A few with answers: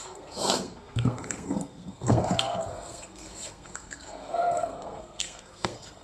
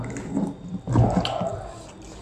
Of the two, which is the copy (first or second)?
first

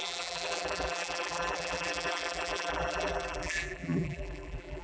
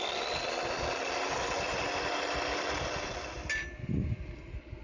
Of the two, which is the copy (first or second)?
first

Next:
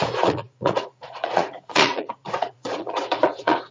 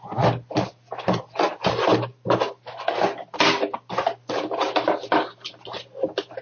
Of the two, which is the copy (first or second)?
first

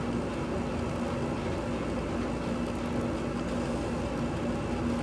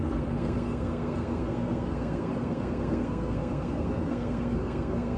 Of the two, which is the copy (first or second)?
second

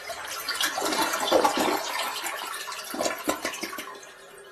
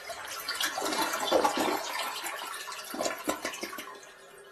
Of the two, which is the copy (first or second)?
first